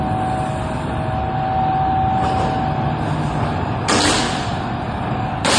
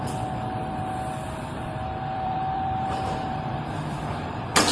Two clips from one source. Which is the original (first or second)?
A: first